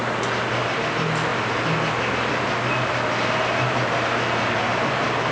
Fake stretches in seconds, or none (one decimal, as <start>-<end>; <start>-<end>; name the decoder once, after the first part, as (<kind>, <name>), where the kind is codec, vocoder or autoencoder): none